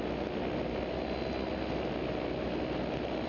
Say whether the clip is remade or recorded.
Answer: recorded